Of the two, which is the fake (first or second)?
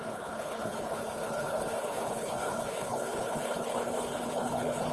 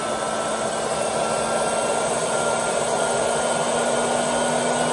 first